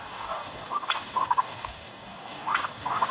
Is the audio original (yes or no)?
no